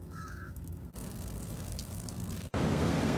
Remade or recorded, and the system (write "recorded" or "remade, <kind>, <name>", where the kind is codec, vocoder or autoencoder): remade, codec, SNAC